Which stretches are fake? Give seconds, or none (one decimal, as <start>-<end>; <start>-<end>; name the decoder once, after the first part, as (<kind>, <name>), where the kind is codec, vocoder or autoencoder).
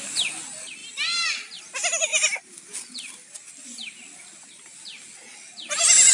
0.8-1.6 (vocoder, BigVGAN v2)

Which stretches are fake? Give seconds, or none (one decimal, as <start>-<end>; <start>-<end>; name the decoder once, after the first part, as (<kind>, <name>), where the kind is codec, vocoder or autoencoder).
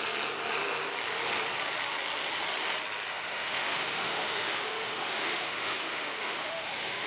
3.1-7.1 (autoencoder, DAC-VAE)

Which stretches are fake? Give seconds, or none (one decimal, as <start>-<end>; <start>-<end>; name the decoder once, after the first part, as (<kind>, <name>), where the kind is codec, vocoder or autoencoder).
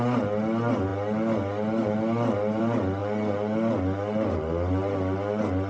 none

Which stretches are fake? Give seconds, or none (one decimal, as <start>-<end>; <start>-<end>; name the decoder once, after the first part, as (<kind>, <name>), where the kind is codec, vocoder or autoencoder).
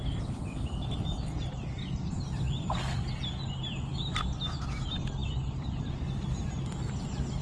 0.5-2.8 (vocoder, BigVGAN v2); 5.2-6.9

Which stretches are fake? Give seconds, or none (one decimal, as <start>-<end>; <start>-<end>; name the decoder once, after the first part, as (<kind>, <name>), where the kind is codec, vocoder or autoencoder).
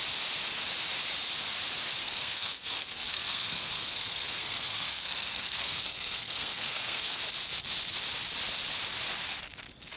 2.0-7.2 (codec, SNAC)